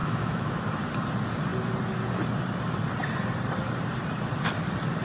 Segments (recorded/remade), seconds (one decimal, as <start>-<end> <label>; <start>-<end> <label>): 0.0-0.7 remade; 0.7-5.0 recorded